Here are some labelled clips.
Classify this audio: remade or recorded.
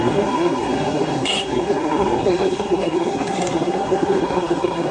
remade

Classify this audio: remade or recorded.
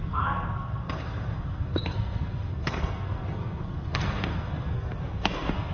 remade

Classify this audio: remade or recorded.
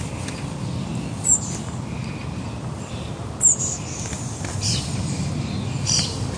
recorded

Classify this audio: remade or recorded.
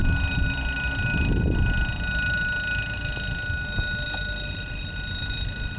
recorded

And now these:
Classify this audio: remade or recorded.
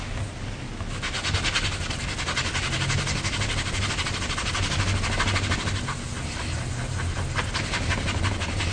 recorded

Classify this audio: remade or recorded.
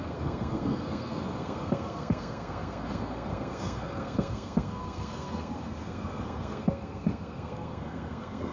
remade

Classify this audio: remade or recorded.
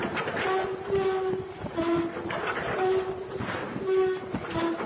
recorded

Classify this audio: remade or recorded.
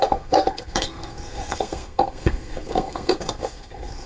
remade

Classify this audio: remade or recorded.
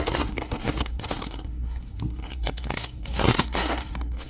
remade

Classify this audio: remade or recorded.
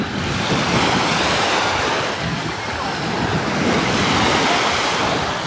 recorded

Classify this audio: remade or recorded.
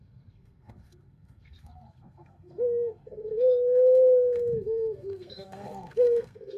remade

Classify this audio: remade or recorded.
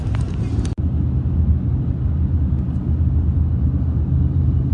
recorded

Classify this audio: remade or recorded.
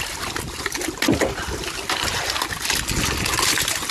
recorded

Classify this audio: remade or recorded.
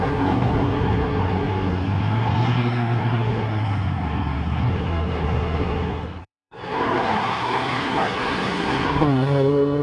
remade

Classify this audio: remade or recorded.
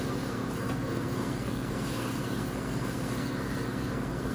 remade